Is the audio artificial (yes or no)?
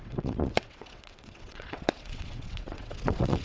yes